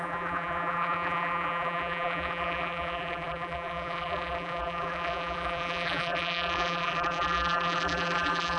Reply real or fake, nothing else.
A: fake